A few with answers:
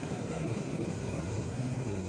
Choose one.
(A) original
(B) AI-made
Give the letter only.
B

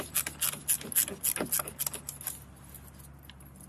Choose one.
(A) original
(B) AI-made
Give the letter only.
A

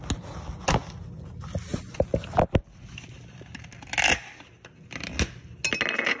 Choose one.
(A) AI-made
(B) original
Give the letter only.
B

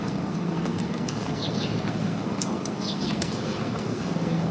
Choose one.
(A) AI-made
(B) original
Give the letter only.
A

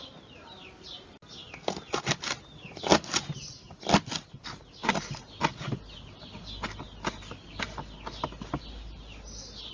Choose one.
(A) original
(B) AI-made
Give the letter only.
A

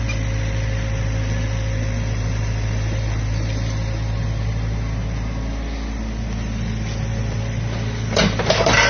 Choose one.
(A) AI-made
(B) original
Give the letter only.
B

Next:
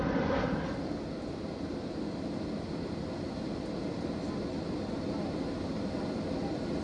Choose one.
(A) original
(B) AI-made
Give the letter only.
A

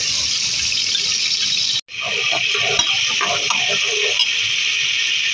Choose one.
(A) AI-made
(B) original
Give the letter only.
B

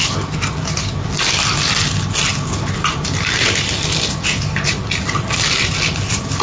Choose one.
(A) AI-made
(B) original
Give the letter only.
B